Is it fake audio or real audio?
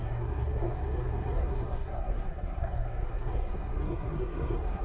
fake